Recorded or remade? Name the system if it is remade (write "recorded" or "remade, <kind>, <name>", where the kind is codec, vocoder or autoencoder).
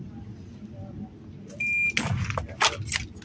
recorded